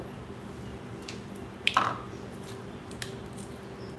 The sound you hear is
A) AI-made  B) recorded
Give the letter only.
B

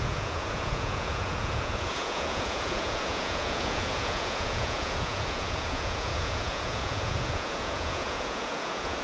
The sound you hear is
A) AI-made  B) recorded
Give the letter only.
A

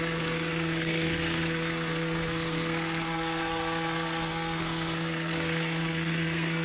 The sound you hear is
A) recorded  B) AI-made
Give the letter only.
B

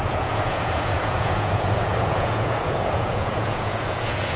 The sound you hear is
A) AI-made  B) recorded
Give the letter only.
A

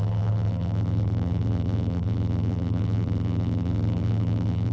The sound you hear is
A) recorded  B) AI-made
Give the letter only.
B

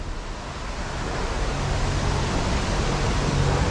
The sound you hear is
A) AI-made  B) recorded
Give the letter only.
B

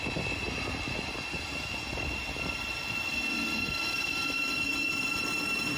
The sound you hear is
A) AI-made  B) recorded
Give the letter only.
B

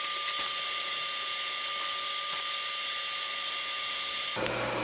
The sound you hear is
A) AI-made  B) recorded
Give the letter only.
B